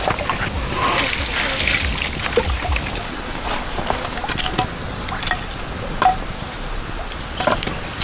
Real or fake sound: real